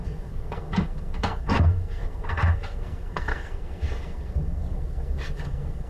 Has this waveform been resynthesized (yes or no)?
yes